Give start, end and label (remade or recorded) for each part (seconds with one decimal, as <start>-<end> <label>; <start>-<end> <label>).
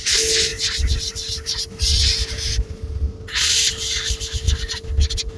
0.0-5.4 recorded